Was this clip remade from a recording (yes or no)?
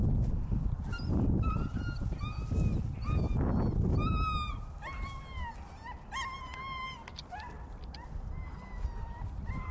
no